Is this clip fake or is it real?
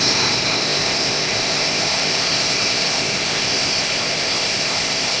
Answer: fake